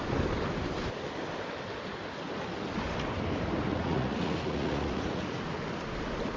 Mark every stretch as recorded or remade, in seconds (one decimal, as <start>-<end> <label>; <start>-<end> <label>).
0.0-3.7 recorded; 3.7-5.4 remade; 5.4-6.4 recorded